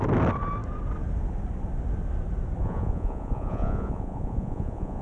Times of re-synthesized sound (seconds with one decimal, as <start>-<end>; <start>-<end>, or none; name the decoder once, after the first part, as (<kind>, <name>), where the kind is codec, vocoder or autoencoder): 2.6-5.0 (vocoder, Vocos)